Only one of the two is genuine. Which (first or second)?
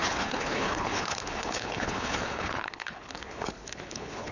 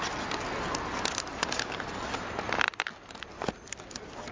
second